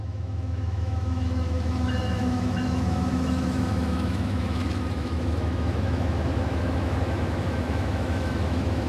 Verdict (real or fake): fake